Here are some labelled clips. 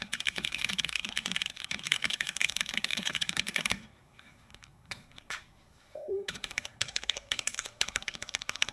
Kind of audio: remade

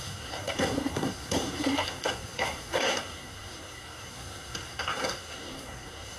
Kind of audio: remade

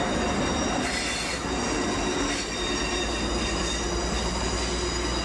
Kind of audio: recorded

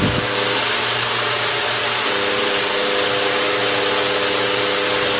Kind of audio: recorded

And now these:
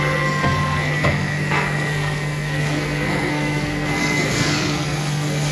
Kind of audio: remade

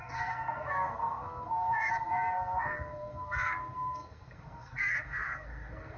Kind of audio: remade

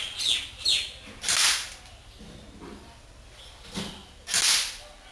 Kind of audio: recorded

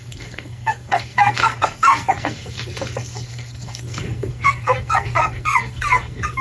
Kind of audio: remade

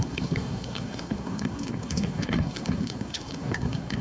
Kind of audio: remade